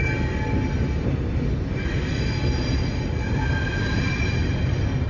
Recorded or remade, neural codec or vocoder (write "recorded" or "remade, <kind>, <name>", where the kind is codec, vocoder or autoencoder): recorded